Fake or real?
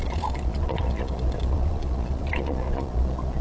fake